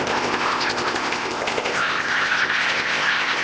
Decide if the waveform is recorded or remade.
remade